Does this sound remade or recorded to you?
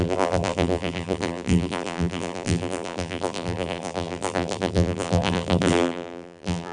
remade